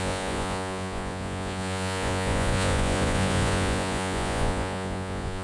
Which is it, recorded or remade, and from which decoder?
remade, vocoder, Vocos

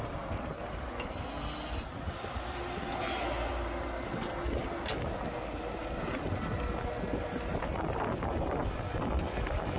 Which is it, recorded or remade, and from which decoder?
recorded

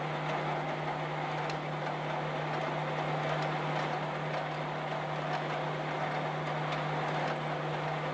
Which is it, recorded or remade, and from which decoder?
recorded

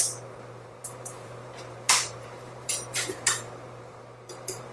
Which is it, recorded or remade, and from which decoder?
remade, vocoder, BigVGAN v2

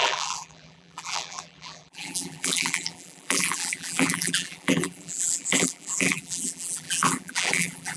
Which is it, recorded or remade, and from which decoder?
remade, vocoder, BigVGAN v2